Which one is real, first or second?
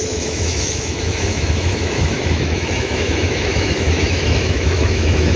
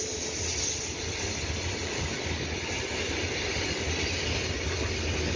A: second